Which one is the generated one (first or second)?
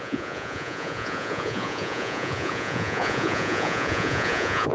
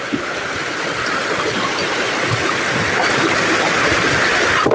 first